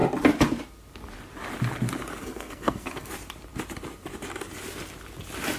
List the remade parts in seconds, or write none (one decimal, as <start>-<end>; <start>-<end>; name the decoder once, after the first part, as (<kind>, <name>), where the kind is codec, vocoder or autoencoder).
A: 2.2-3.1 (codec, SNAC)